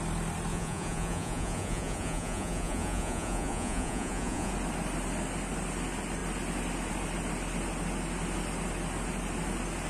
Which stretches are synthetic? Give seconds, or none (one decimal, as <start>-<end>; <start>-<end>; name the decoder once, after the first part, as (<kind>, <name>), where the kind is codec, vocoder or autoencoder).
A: 0.5-4.5 (vocoder, Vocos)